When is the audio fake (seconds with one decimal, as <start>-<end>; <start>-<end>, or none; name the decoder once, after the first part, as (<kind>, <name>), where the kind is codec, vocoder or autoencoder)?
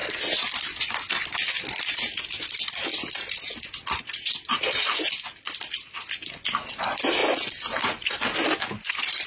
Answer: none